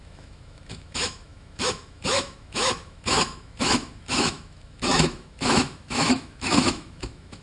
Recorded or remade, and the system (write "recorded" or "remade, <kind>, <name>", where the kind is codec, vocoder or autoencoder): remade, autoencoder, DAC-VAE